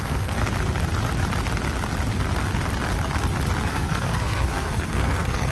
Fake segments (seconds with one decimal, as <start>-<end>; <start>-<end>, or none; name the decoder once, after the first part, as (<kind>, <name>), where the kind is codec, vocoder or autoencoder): 0.0-0.4 (codec, SNAC); 3.7-5.5